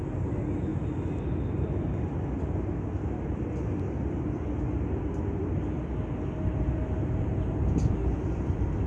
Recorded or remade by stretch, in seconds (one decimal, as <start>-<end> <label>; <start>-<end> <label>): 0.0-8.9 recorded